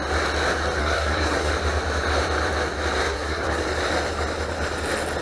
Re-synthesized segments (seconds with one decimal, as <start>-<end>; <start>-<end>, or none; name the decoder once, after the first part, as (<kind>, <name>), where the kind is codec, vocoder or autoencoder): 0.8-1.5 (codec, SNAC); 3.0-3.6